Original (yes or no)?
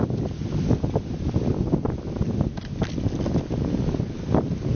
yes